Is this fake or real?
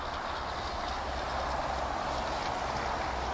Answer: real